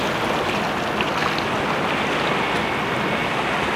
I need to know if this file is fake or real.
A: real